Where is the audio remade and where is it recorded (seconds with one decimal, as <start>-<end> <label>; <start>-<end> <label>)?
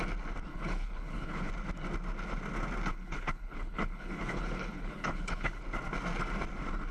0.0-0.5 recorded; 0.5-1.5 remade; 1.5-2.9 recorded; 2.9-5.6 remade; 5.6-6.9 recorded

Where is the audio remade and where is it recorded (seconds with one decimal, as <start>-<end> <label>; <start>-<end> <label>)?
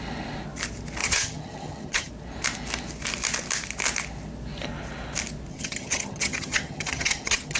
0.0-1.0 recorded; 1.0-2.1 remade; 2.1-5.5 recorded; 5.5-7.6 remade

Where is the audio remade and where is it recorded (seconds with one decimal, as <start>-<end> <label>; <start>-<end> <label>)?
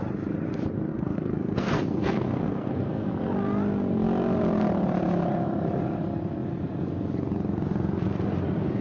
0.0-0.9 recorded; 0.9-3.1 remade; 3.1-8.8 recorded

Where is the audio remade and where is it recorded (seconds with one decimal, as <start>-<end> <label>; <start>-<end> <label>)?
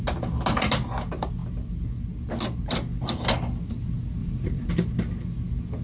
0.0-4.2 recorded; 4.2-4.7 remade; 4.7-5.8 recorded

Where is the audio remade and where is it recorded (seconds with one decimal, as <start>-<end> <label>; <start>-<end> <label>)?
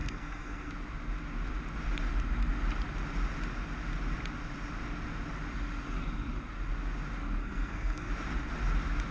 0.0-0.7 remade; 0.7-7.4 recorded; 7.4-8.1 remade; 8.1-9.1 recorded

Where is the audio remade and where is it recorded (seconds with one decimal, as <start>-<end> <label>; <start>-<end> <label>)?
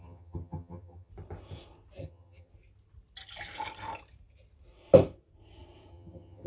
0.0-1.1 remade; 1.1-2.0 recorded; 2.0-2.5 remade; 2.5-5.9 recorded; 5.9-6.5 remade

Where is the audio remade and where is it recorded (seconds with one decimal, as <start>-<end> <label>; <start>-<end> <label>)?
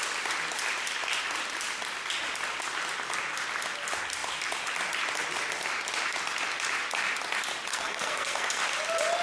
0.0-7.7 recorded; 7.7-8.6 remade; 8.6-9.2 recorded